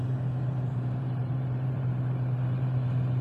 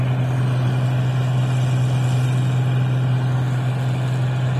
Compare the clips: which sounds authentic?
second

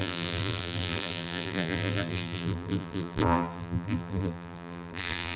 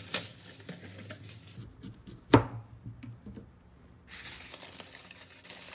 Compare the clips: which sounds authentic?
second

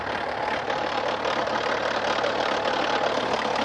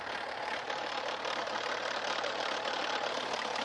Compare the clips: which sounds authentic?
first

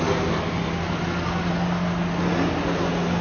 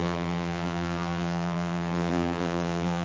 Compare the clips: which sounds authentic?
first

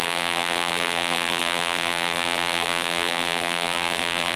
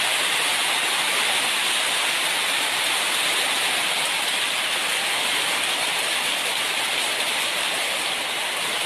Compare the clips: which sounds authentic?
second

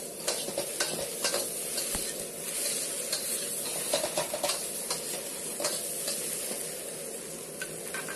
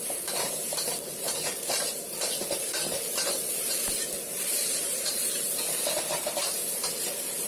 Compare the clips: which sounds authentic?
first